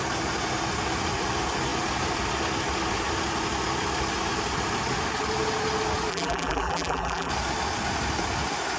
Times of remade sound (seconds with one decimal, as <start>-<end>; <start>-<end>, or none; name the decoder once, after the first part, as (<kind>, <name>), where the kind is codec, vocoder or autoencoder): 6.1-7.3 (vocoder, BigVGAN v2)